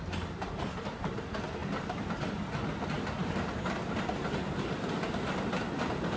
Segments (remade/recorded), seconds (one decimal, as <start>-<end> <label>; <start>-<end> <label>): 0.0-6.2 recorded